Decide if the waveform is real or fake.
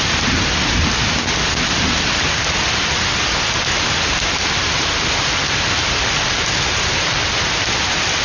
real